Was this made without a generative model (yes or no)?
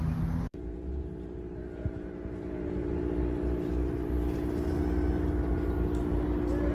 yes